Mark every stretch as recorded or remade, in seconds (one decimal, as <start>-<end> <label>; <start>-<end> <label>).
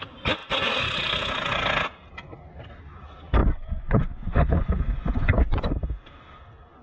0.0-3.4 recorded; 3.4-5.7 remade; 5.7-6.8 recorded